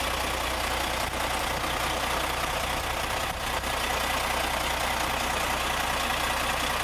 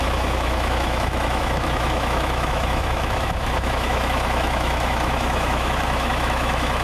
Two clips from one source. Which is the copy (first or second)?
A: second